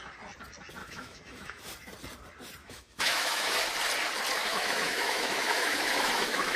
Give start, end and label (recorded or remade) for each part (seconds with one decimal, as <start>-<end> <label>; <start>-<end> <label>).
0.0-0.8 recorded; 0.8-1.7 remade; 1.7-2.6 recorded; 2.6-3.6 remade; 3.6-4.4 recorded; 4.4-6.6 remade